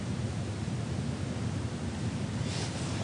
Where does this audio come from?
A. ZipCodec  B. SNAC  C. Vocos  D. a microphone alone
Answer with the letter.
D